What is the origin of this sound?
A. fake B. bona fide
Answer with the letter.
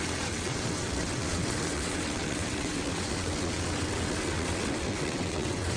A